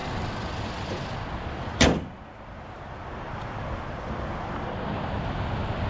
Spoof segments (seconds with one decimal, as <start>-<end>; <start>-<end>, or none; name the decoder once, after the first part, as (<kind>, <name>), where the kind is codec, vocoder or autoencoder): none